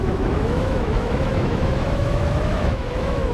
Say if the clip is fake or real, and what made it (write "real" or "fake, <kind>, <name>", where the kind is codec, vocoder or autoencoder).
fake, autoencoder, DAC-VAE